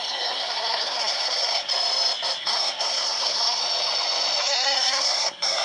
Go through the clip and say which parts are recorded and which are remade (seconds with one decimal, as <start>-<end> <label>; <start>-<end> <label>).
0.0-1.7 remade; 1.7-2.4 recorded; 2.4-3.6 remade; 3.6-4.4 recorded; 4.4-5.6 remade